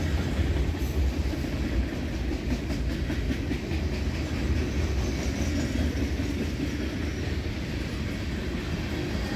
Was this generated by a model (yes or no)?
no